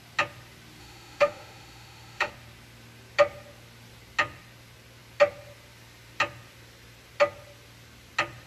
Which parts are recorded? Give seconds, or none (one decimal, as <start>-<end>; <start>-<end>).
0.0-0.8; 2.3-8.5